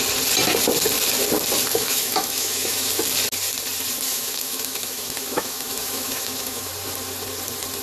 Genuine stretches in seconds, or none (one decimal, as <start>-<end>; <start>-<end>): 0.0-1.7; 2.9-4.1; 6.7-7.8